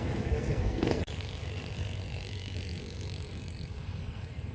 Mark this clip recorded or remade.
remade